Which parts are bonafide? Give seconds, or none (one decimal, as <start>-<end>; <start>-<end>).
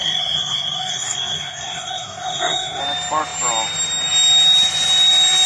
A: 2.8-5.5